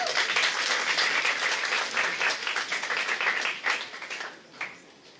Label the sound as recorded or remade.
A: recorded